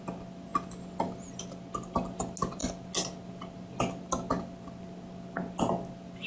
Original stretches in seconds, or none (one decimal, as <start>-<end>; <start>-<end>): 0.0-6.3